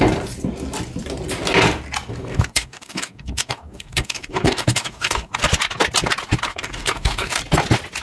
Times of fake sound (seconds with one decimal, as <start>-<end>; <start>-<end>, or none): 2.3-5.3; 6.5-7.4